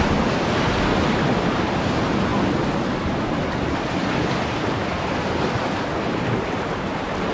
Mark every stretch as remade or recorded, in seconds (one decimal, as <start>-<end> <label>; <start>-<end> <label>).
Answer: 0.0-7.3 recorded